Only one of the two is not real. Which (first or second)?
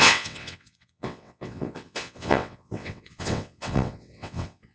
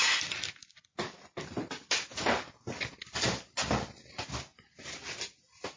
first